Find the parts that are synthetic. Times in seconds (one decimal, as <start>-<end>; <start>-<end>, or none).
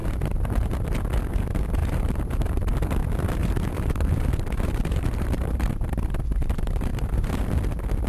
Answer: 0.0-1.0; 1.8-2.7; 3.4-6.0; 6.9-7.5